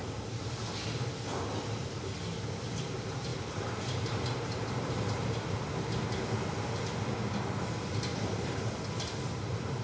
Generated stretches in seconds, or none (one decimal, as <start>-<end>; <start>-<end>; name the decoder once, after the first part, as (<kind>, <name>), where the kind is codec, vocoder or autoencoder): 0.0-0.5 (vocoder, BigVGAN v2); 3.3-5.7; 8.1-8.6